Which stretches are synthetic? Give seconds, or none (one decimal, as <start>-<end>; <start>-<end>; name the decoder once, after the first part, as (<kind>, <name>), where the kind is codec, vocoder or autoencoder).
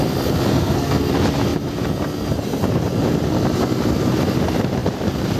0.5-1.1 (codec, SNAC)